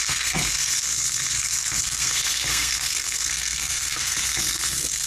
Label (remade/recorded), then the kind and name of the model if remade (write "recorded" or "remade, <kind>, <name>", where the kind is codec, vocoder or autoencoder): remade, codec, SNAC